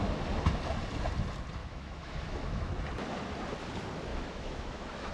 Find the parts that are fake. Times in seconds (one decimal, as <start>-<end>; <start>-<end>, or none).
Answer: 1.6-2.7; 4.1-5.1